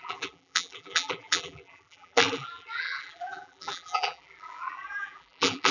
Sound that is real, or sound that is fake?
fake